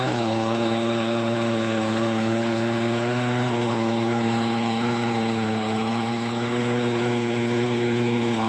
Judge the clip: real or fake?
fake